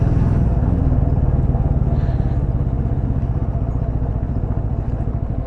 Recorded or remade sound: recorded